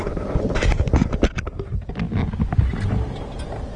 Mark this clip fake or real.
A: real